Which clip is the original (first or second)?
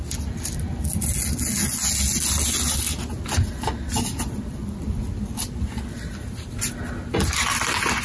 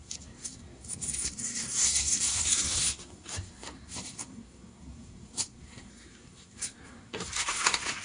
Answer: first